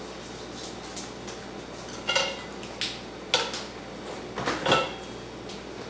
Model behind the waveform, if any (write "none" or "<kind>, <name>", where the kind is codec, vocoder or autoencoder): none